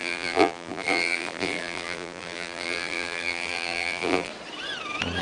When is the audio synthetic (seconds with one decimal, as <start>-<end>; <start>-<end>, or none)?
0.0-4.3